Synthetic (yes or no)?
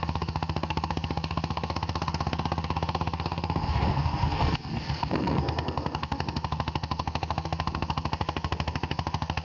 yes